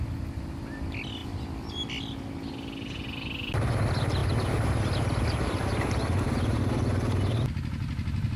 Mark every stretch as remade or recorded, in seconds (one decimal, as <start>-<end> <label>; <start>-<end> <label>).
0.0-8.4 recorded